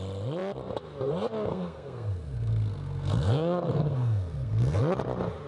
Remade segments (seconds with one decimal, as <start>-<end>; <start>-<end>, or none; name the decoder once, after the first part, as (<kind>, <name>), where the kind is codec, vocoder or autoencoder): 1.5-4.8 (codec, SNAC)